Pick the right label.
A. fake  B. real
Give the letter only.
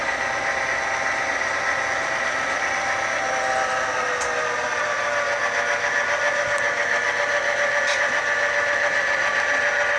B